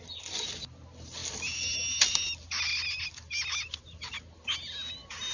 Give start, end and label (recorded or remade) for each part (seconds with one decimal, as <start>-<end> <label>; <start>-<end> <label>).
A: 0.0-5.3 recorded